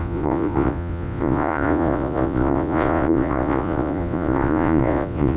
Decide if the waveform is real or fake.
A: fake